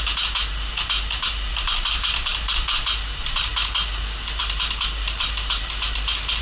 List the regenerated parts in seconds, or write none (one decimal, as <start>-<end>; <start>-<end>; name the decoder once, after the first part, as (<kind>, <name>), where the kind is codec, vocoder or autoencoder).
0.0-3.5 (vocoder, BigVGAN v2); 4.4-5.6